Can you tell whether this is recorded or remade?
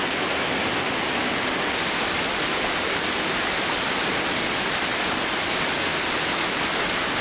recorded